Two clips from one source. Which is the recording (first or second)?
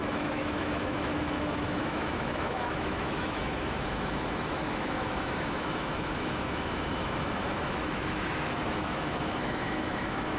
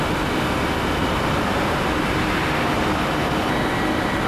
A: second